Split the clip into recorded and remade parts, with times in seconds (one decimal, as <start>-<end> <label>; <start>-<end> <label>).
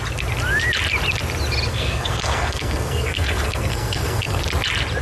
0.0-1.7 recorded; 1.7-4.4 remade; 4.4-5.0 recorded